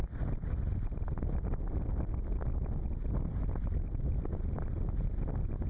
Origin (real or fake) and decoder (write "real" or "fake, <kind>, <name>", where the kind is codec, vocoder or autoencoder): real